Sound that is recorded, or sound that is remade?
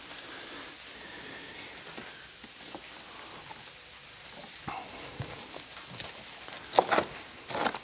recorded